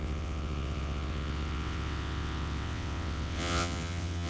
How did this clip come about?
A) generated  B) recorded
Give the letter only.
A